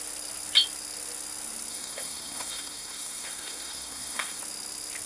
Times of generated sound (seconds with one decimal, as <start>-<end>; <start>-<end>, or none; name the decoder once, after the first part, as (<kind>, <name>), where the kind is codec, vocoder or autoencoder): 1.7-4.4 (codec, SNAC)